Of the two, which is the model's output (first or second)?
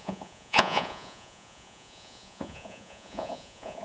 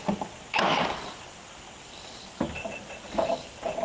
first